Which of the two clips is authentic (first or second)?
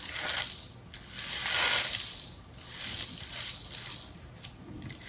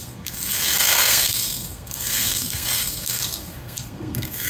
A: first